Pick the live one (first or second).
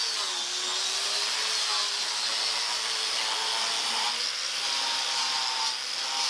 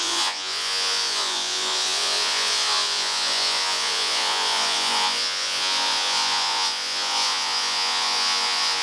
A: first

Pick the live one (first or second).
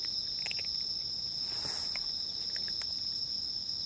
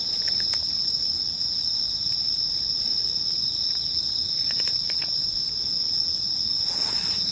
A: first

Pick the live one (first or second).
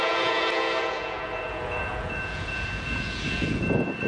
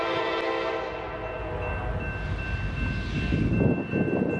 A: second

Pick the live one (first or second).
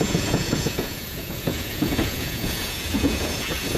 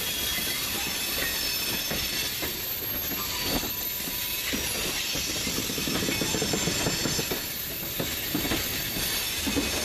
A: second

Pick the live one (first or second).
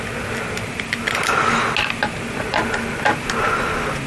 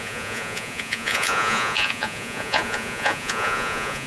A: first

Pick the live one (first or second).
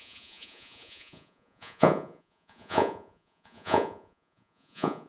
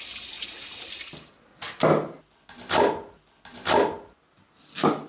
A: second